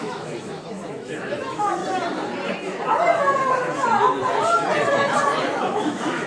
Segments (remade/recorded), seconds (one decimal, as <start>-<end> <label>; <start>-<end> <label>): 0.0-1.8 remade; 1.8-5.6 recorded; 5.6-6.3 remade